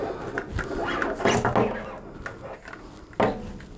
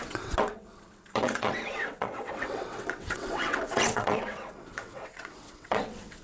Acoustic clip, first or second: first